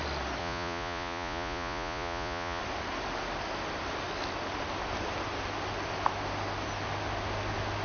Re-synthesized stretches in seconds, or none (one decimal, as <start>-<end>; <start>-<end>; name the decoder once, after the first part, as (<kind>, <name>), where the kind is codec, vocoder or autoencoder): 0.4-2.6 (vocoder, Vocos)